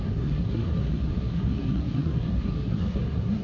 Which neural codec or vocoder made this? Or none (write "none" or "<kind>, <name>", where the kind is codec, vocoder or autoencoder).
codec, SNAC